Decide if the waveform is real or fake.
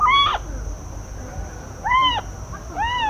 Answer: real